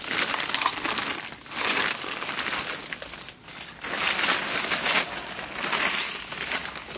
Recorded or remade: recorded